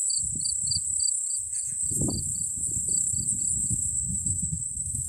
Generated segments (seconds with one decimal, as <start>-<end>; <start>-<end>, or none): 3.9-5.1